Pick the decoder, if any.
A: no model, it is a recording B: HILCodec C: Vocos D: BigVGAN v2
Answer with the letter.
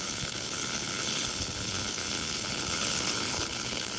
B